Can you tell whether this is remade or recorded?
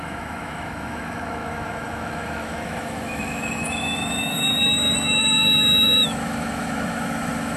remade